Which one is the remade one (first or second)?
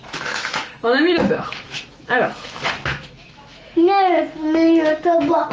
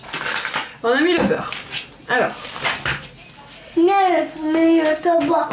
first